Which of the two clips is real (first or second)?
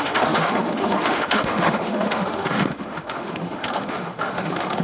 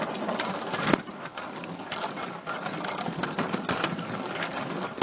second